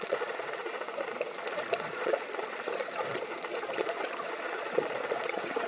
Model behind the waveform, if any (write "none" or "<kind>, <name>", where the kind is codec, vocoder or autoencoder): vocoder, Vocos